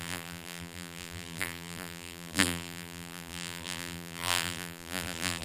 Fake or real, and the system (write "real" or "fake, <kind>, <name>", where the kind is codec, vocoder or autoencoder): fake, vocoder, BigVGAN v2